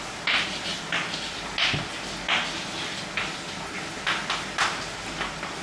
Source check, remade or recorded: recorded